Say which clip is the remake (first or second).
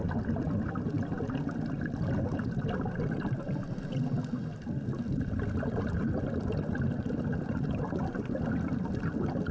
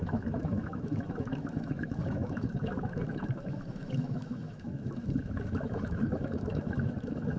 second